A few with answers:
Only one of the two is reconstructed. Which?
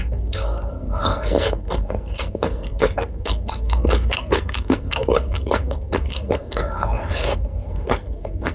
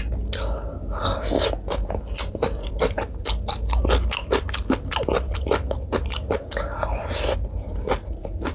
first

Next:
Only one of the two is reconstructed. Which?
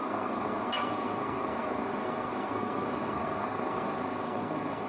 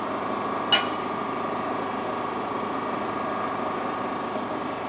first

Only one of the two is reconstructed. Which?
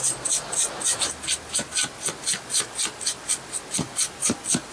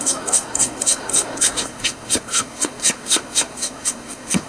second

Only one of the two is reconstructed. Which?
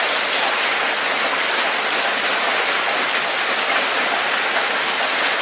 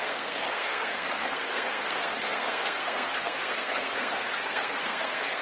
second